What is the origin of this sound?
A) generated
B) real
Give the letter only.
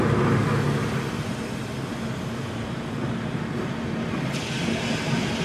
B